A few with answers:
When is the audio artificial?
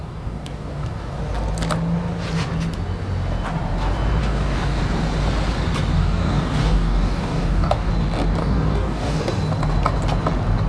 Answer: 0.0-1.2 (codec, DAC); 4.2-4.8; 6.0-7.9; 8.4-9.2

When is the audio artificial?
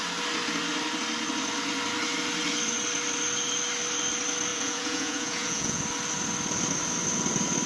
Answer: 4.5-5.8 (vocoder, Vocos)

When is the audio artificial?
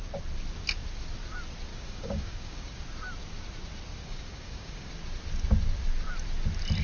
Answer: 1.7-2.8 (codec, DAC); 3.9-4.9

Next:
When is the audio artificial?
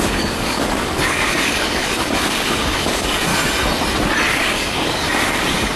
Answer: 0.0-3.3 (codec, DAC); 4.3-5.8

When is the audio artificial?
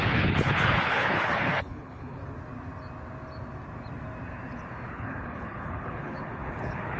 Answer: 0.0-2.2 (codec, HILCodec); 4.9-7.0